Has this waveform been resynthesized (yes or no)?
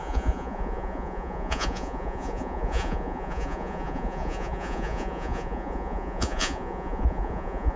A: yes